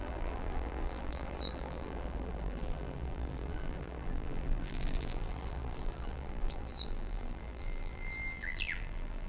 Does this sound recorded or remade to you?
remade